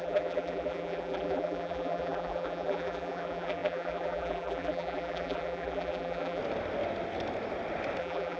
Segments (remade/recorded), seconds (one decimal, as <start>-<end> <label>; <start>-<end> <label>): 0.0-6.4 remade; 6.4-8.0 recorded; 8.0-8.4 remade